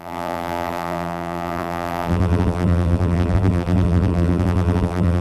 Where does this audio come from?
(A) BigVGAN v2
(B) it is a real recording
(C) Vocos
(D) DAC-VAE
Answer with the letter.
A